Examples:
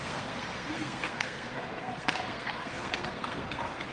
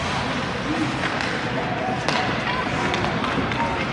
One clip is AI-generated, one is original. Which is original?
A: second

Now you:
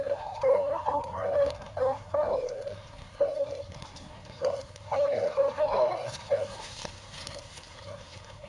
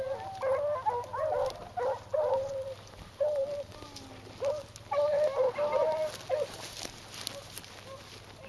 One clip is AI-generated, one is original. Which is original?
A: second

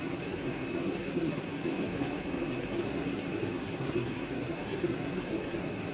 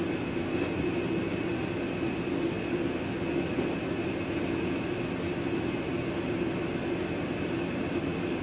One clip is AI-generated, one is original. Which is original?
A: second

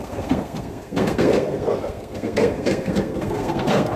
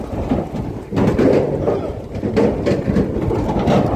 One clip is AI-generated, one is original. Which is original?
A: second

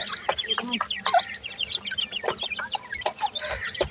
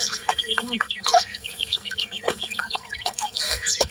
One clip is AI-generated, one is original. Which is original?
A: first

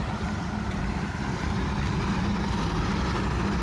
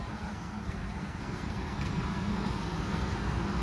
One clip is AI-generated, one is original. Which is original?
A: first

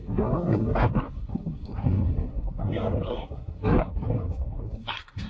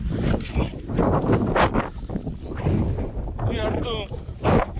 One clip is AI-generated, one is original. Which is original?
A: second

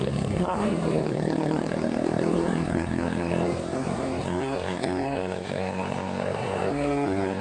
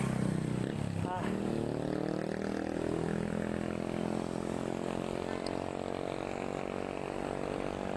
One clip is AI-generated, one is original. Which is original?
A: second